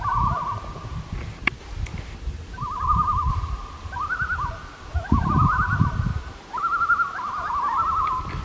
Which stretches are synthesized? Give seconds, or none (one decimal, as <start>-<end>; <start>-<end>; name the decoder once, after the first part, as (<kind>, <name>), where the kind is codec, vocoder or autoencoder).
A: 1.9-6.4 (vocoder, BigVGAN v2)